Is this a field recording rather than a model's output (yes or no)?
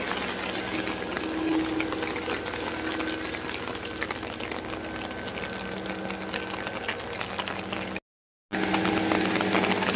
yes